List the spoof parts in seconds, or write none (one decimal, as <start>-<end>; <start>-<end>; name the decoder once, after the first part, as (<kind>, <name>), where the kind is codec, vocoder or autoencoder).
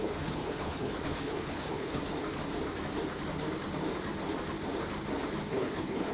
0.0-2.0 (codec, HILCodec); 5.5-6.1